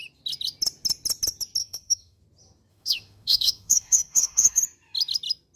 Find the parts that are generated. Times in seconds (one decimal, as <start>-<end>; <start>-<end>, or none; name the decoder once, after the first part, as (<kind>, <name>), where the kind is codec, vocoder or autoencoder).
1.6-2.2 (autoencoder, DAC-VAE); 2.7-4.6